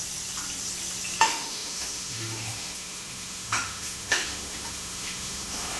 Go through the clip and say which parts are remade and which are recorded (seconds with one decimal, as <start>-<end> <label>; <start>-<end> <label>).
0.0-1.2 recorded; 1.2-5.8 remade

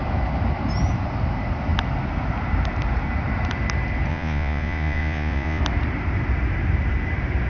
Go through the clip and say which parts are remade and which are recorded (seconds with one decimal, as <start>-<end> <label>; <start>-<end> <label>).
0.0-4.1 recorded; 4.1-5.6 remade; 5.6-7.5 recorded

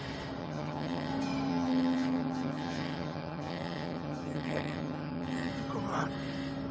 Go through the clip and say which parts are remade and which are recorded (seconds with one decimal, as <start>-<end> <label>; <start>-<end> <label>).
0.0-0.4 recorded; 0.4-1.1 remade; 1.1-1.5 recorded; 1.5-5.5 remade; 5.5-6.7 recorded